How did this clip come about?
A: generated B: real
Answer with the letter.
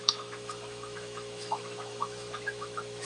A